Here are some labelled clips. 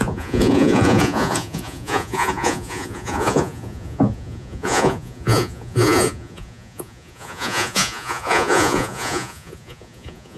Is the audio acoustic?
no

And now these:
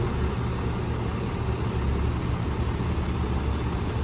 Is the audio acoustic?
yes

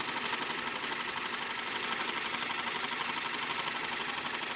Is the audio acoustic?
yes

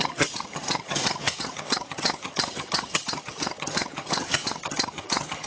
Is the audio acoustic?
no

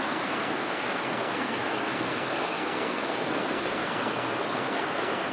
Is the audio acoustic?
no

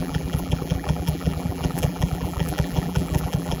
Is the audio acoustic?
no